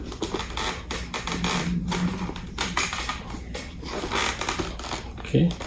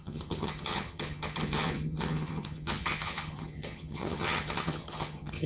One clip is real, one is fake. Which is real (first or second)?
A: first